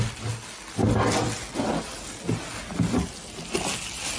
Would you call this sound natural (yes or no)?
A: yes